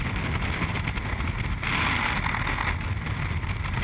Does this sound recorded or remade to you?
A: recorded